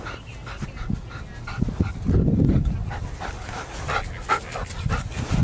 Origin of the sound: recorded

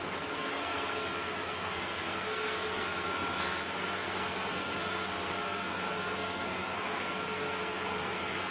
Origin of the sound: remade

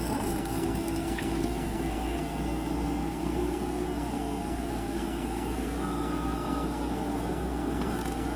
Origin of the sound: remade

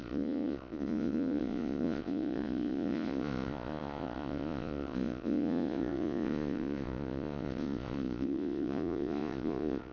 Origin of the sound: remade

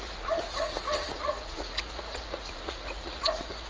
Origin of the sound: remade